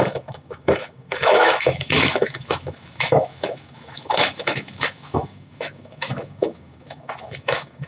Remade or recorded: remade